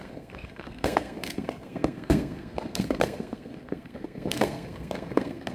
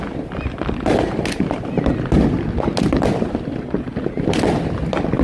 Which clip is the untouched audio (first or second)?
second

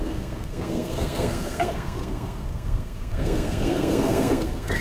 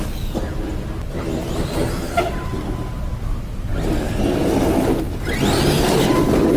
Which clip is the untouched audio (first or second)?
second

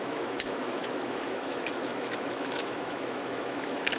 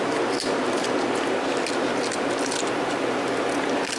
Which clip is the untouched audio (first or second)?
second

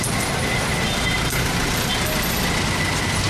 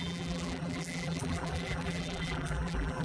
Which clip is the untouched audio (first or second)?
first